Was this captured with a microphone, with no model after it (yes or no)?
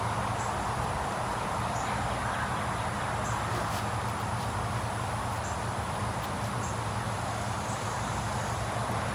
yes